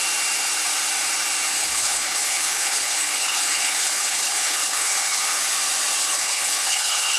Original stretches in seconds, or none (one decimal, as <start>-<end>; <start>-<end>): 0.0-1.5; 5.4-6.0